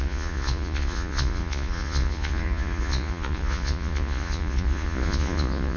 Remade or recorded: remade